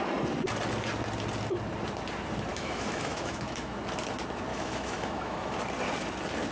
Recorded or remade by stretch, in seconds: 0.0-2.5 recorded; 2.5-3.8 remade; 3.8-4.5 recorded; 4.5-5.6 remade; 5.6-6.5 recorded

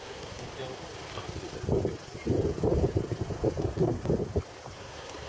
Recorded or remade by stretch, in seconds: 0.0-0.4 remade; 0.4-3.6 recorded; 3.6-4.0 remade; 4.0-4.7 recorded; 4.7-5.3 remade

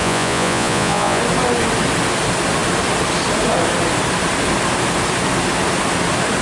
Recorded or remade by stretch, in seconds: 0.0-1.2 remade; 1.2-6.4 recorded